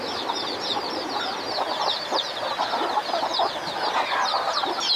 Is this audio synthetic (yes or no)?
no